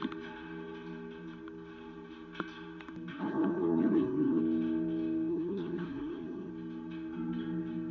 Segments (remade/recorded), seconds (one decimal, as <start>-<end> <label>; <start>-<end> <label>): 0.0-3.1 recorded; 3.1-4.4 remade; 4.4-5.3 recorded; 5.3-6.5 remade; 6.5-7.9 recorded

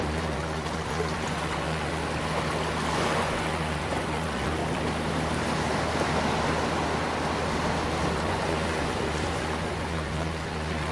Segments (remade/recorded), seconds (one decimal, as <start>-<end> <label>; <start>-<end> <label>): 0.0-2.0 remade; 2.0-2.9 recorded; 2.9-4.6 remade; 4.6-8.1 recorded; 8.1-10.9 remade

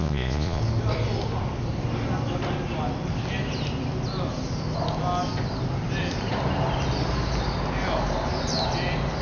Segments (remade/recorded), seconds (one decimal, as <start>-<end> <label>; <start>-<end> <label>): 0.0-0.6 remade; 0.6-9.2 recorded

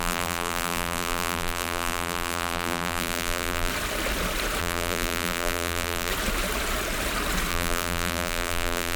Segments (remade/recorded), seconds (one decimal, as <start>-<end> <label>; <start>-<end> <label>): 0.0-3.7 remade; 3.7-4.6 recorded; 4.6-6.1 remade; 6.1-7.5 recorded; 7.5-9.0 remade

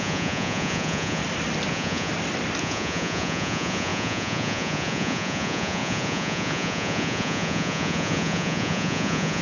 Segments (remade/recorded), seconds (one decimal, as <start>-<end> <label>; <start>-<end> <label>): 0.0-1.2 remade; 1.2-1.7 recorded; 1.7-2.1 remade; 2.1-2.6 recorded; 2.6-9.4 remade

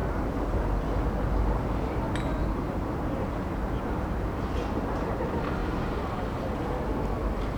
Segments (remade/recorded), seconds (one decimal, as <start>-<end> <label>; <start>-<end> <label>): 0.0-2.4 recorded; 2.4-4.4 remade; 4.4-5.6 recorded; 5.6-6.5 remade; 6.5-7.6 recorded

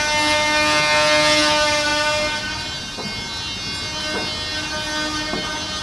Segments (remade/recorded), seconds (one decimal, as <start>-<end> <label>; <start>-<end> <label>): 0.0-5.8 recorded

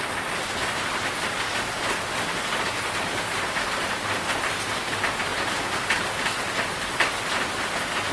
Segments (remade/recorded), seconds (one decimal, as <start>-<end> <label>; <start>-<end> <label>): 0.0-8.1 recorded